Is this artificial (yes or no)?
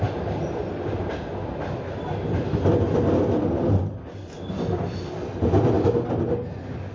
no